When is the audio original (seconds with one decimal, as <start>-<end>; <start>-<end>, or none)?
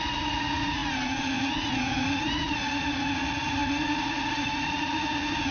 none